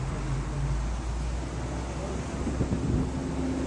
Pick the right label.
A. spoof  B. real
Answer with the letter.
B